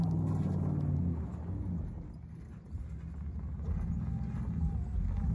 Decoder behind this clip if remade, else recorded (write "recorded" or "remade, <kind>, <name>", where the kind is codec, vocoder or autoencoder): recorded